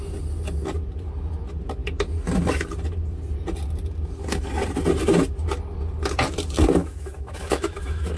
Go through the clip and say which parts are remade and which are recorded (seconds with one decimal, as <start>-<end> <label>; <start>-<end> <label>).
0.0-6.8 recorded; 6.8-8.2 remade